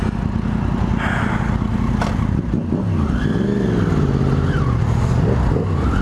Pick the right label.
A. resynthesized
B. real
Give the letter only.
B